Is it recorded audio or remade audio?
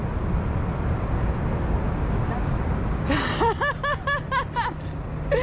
recorded